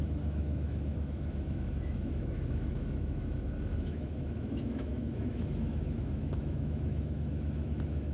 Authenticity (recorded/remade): remade